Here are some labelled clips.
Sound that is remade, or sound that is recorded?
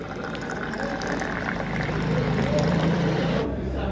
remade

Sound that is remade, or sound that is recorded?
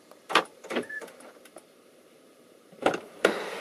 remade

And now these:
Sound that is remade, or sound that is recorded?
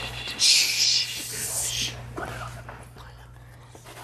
recorded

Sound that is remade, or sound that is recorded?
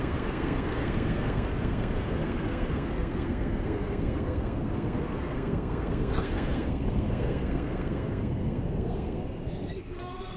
remade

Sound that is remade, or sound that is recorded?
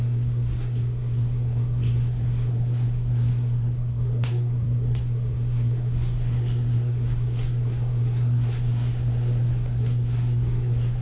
remade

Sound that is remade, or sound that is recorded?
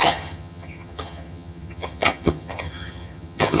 remade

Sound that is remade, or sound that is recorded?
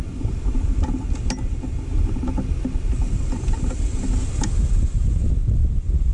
recorded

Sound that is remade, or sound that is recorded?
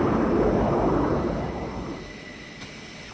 recorded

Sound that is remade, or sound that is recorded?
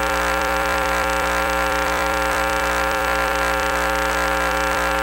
remade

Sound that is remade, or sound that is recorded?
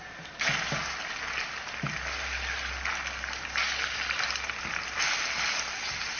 recorded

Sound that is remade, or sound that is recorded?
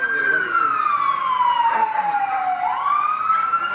recorded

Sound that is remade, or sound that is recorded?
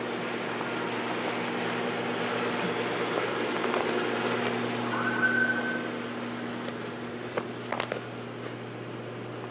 recorded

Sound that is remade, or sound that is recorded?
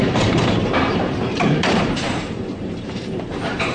remade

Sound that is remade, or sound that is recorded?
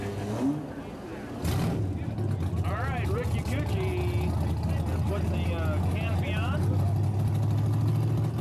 recorded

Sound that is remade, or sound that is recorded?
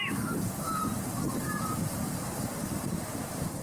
remade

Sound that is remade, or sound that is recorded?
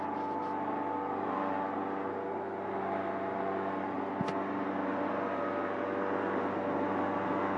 recorded